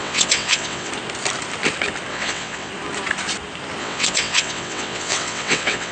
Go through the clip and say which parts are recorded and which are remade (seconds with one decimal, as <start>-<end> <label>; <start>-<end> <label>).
0.0-0.9 remade; 0.9-2.1 recorded; 2.1-2.7 remade; 2.7-3.8 recorded; 3.8-5.9 remade